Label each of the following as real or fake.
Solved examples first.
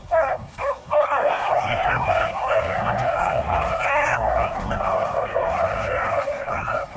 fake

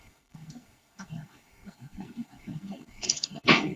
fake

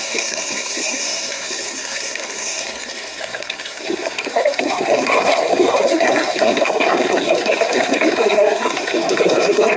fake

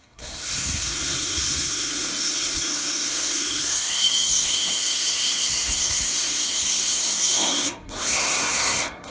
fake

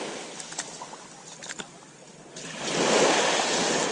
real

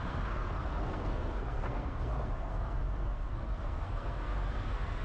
fake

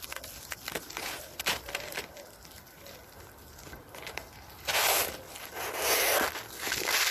real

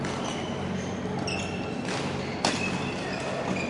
real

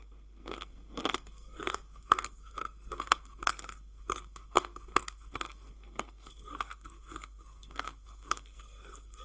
fake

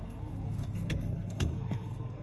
fake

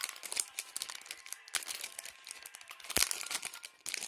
real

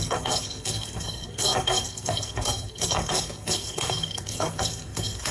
fake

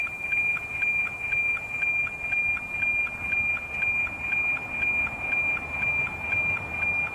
real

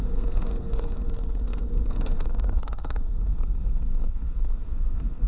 fake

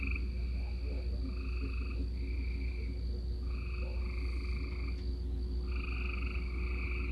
real